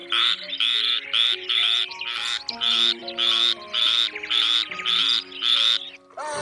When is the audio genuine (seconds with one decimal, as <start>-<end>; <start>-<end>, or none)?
0.0-6.4